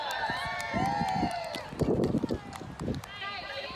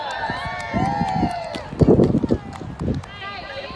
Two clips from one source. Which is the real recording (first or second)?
second